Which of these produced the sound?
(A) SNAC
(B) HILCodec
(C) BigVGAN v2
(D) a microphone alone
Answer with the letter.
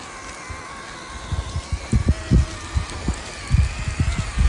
D